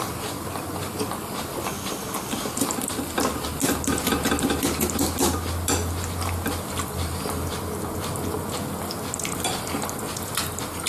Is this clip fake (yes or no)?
no